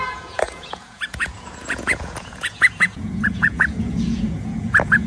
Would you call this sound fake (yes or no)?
yes